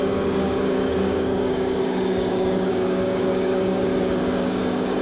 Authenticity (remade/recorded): remade